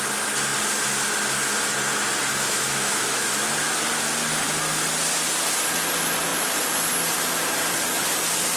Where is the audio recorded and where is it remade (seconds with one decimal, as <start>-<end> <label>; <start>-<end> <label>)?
0.0-2.3 recorded; 2.3-3.5 remade; 3.5-8.6 recorded

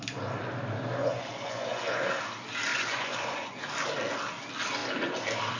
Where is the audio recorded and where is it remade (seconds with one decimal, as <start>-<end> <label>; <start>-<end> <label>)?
0.0-1.0 recorded; 1.0-2.1 remade; 2.1-2.7 recorded; 2.7-3.6 remade; 3.6-5.6 recorded

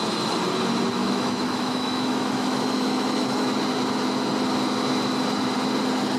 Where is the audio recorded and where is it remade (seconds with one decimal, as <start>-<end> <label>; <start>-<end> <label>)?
0.0-1.0 recorded; 1.0-3.6 remade; 3.6-6.2 recorded

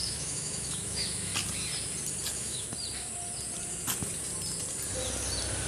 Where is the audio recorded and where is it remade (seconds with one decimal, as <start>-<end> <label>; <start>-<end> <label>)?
0.0-1.3 remade; 1.3-2.3 recorded; 2.3-2.7 remade; 2.7-5.7 recorded

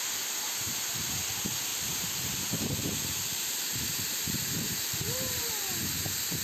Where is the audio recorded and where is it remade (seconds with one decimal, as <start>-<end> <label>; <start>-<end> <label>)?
0.0-1.7 recorded; 1.7-5.5 remade; 5.5-6.4 recorded

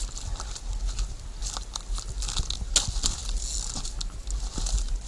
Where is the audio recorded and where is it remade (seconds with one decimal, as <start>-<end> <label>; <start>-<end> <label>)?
0.0-5.1 recorded